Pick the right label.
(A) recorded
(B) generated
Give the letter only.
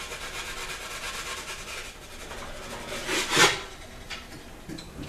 A